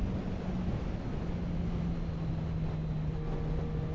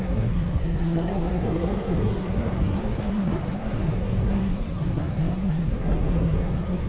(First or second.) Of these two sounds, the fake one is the second